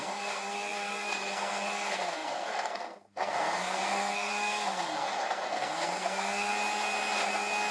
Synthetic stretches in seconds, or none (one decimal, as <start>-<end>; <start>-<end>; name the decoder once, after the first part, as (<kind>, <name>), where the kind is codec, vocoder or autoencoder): 0.0-6.5 (codec, SNAC)